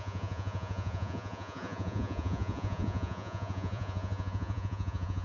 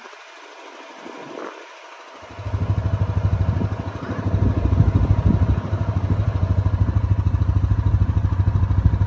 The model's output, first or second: first